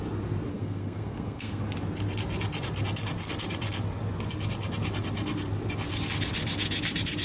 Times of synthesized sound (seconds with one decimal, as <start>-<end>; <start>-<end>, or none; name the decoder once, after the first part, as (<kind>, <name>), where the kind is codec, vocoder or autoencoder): 0.5-1.6 (codec, SNAC)